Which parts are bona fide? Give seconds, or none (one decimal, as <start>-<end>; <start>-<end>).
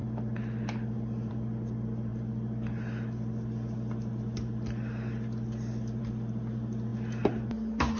0.0-8.0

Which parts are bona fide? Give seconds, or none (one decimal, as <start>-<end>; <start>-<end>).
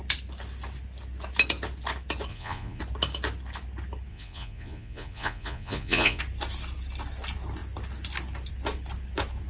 0.0-2.3; 2.8-4.1; 6.2-9.5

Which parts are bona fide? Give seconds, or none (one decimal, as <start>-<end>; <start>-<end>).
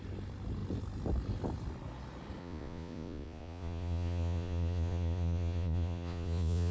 0.0-2.4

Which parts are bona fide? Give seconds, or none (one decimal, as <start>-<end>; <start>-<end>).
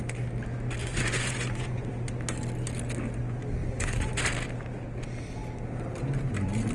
0.0-0.8; 1.9-3.6; 4.2-6.7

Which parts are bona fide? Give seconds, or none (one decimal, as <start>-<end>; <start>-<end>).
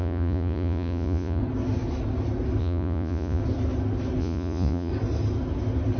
1.4-2.6; 3.4-4.2; 4.9-6.0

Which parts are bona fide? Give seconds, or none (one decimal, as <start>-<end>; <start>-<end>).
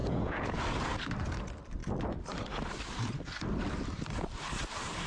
0.6-5.1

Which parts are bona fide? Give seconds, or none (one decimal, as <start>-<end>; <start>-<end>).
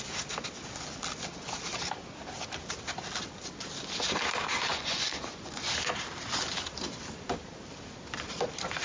0.0-4.7; 5.6-8.8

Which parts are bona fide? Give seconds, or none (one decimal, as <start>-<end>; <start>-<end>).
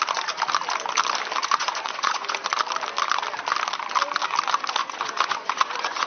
0.0-1.4; 2.4-4.8